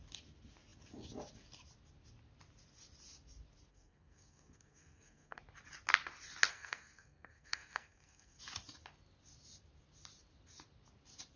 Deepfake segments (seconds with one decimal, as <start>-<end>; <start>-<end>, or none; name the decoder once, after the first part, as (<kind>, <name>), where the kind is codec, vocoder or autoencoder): 3.7-5.4 (codec, SNAC); 6.5-8.4